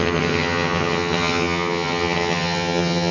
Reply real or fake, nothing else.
fake